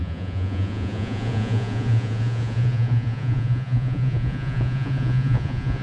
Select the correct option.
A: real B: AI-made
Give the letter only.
B